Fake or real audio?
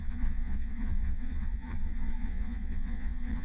fake